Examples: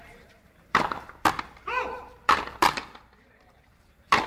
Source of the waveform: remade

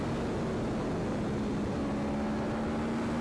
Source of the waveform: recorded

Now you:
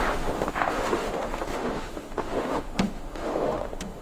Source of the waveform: remade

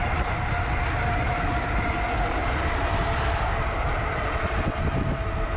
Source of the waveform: recorded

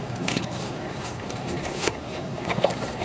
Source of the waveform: remade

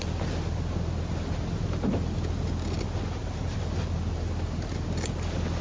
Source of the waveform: recorded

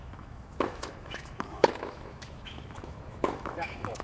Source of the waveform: remade